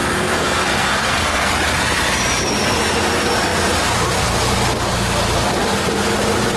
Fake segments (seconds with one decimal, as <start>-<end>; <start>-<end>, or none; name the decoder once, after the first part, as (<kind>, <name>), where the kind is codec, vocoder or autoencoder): 0.0-1.5 (codec, SNAC)